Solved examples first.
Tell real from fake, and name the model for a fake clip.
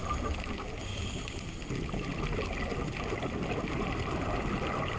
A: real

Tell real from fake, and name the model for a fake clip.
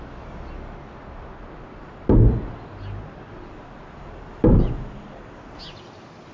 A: real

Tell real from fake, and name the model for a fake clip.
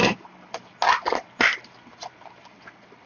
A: real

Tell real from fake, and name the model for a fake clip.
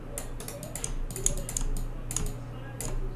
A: real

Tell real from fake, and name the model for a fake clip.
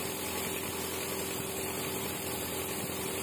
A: real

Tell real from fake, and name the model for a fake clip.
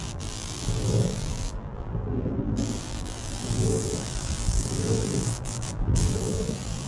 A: fake, vocoder, BigVGAN v2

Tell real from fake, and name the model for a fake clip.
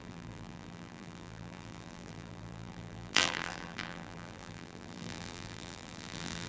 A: fake, vocoder, BigVGAN v2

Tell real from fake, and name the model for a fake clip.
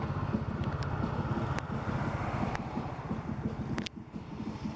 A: fake, vocoder, BigVGAN v2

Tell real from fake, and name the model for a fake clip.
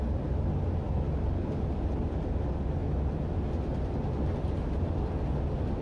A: real